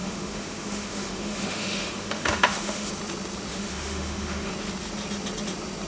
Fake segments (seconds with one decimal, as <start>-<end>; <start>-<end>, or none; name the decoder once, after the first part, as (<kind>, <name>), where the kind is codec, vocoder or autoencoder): 0.0-2.9 (autoencoder, DAC-VAE); 3.5-4.5